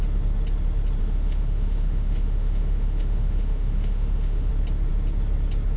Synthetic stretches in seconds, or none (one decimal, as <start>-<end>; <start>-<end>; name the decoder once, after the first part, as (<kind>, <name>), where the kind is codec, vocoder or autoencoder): 1.0-4.5 (autoencoder, DAC-VAE)

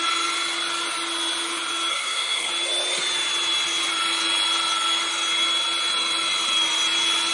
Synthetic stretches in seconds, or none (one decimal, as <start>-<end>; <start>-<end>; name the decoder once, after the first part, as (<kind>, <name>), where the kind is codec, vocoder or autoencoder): 1.9-2.5 (codec, SNAC)

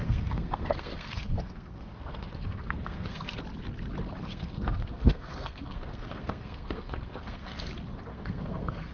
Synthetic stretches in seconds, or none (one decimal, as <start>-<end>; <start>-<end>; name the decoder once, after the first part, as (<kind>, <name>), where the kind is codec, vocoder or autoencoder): 0.0-3.4 (codec, SNAC); 4.3-7.7; 8.1-8.9

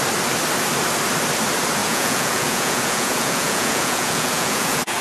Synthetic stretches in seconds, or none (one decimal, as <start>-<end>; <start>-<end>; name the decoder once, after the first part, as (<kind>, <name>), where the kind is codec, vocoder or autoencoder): 1.8-5.0 (vocoder, Vocos)

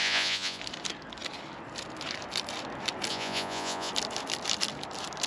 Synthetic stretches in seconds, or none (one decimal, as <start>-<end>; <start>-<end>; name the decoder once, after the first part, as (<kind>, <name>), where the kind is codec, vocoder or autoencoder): 0.0-0.6 (vocoder, Vocos); 3.1-3.9

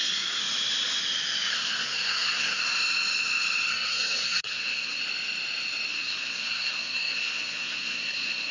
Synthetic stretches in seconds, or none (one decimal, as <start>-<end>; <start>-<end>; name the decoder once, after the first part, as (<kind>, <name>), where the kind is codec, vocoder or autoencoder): 0.0-0.4 (codec, SNAC); 1.5-2.6; 3.7-5.0; 5.9-8.5